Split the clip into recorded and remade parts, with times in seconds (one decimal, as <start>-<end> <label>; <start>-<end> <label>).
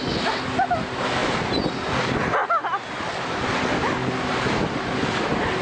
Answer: 0.0-5.6 recorded